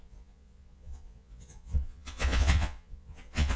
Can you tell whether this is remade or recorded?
remade